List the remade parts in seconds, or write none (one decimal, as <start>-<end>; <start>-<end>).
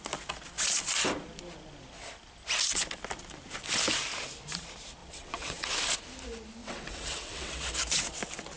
5.0-5.7; 6.6-7.7